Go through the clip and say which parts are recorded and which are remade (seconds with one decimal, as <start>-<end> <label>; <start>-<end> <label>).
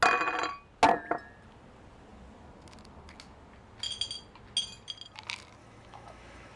0.0-5.6 recorded; 5.6-6.6 remade